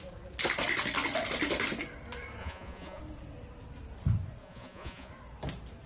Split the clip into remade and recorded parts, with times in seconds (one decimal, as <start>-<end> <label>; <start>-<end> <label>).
0.0-2.4 recorded; 2.4-3.0 remade; 3.0-4.4 recorded; 4.4-5.1 remade; 5.1-5.9 recorded